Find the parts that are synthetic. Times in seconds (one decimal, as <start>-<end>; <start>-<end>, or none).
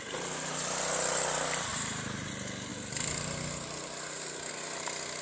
1.7-2.3